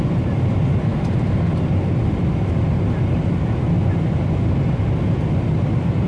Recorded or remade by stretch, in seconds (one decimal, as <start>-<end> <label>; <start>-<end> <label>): 0.0-6.1 recorded